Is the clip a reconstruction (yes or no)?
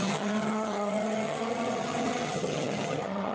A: yes